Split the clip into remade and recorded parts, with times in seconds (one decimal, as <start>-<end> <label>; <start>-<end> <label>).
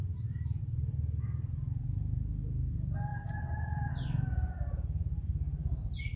0.0-6.2 recorded